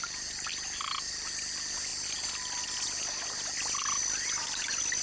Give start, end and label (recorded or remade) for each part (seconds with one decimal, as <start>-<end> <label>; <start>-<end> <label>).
0.0-5.0 recorded